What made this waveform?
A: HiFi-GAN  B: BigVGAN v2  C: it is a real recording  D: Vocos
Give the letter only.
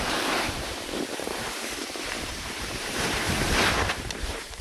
B